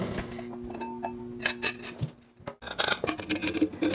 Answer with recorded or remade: recorded